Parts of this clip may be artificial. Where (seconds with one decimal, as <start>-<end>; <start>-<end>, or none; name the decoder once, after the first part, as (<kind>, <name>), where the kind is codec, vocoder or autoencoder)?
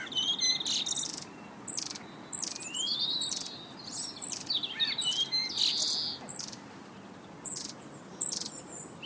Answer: none